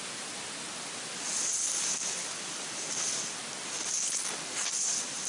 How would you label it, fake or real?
real